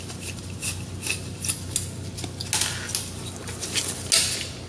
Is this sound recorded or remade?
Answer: recorded